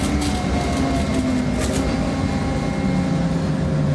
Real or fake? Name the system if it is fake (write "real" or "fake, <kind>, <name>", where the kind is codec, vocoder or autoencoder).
real